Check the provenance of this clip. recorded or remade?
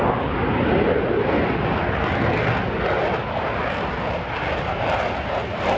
recorded